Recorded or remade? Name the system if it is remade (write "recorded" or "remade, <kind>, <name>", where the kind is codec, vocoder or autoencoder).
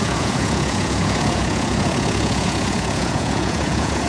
remade, vocoder, Vocos